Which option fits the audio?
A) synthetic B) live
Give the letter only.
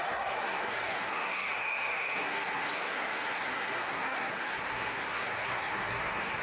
A